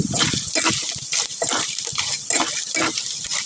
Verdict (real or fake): real